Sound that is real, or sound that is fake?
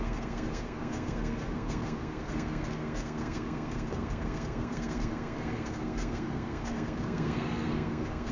fake